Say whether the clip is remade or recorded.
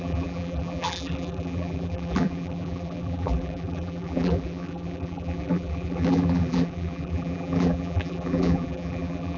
remade